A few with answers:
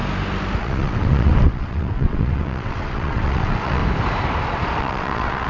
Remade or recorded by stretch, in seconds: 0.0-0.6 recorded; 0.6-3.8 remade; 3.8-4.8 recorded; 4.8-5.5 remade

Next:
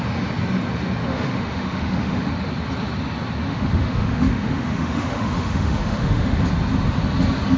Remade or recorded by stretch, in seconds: 0.0-1.1 recorded; 1.1-2.3 remade; 2.3-3.5 recorded; 3.5-6.4 remade; 6.4-7.6 recorded